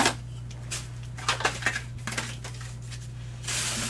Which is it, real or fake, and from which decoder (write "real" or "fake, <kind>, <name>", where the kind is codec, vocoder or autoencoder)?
real